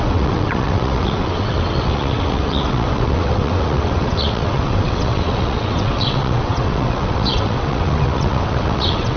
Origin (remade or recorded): remade